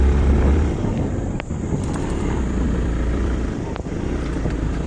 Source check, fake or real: fake